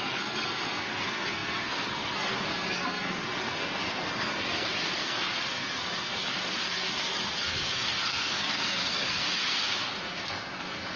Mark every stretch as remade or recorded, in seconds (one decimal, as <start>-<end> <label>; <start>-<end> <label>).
0.0-11.0 remade